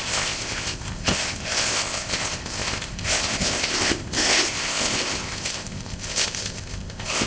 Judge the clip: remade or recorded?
remade